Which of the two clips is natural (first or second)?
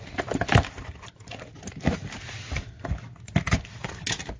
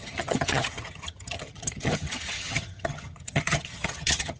first